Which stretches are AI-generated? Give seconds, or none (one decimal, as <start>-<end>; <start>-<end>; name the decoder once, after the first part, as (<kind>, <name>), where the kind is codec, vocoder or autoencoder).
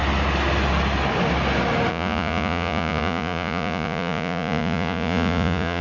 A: 1.9-5.8 (vocoder, Vocos)